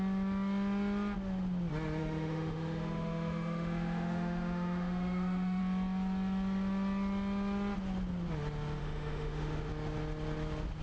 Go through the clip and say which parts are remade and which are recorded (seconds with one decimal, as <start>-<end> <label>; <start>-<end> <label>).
0.0-2.0 recorded; 2.0-5.6 remade; 5.6-8.8 recorded; 8.8-9.7 remade; 9.7-10.8 recorded